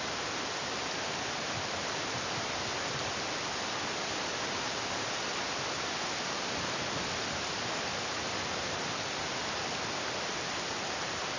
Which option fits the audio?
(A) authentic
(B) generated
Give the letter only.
A